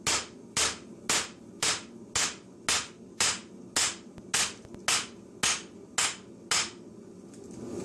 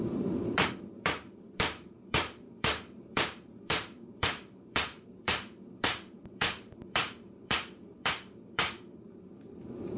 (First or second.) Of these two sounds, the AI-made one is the second